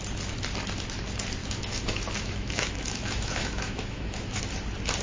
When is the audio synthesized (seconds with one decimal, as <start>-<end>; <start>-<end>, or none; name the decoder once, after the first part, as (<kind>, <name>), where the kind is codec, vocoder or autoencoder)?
1.4-4.4 (autoencoder, DAC-VAE)